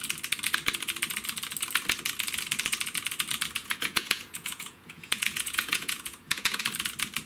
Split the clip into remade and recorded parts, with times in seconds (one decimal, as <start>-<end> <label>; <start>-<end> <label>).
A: 0.0-3.6 recorded; 3.6-6.6 remade; 6.6-7.3 recorded